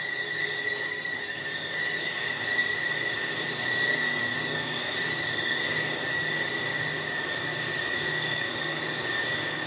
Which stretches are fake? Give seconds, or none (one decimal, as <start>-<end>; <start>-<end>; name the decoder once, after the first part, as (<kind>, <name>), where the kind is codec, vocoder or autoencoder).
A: 0.0-9.7 (codec, DAC)